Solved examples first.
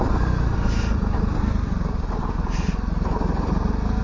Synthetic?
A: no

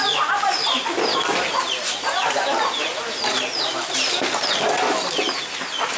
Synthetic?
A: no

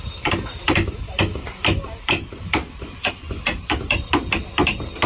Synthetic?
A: no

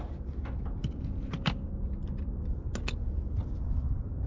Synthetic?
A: no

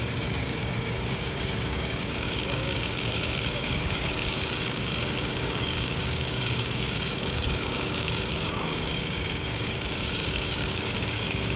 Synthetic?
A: yes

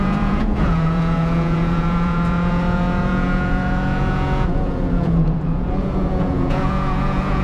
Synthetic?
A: yes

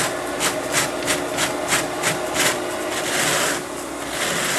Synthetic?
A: no